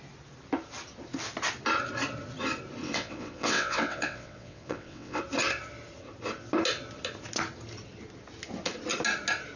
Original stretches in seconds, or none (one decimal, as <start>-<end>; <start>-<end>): 0.0-2.8; 5.2-9.6